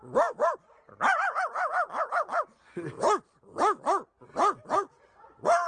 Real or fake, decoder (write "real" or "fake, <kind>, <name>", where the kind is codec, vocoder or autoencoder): real